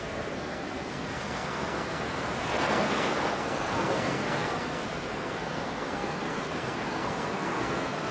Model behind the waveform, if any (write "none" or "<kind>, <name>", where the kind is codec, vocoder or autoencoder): codec, SNAC